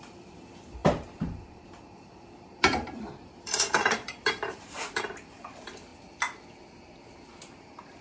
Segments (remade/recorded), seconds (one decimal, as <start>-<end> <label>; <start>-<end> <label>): 0.0-5.9 remade; 5.9-7.6 recorded; 7.6-8.0 remade